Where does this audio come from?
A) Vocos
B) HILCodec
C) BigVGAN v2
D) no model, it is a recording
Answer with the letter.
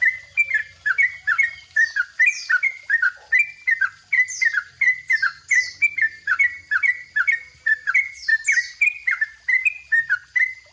D